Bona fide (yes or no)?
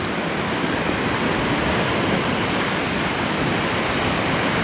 yes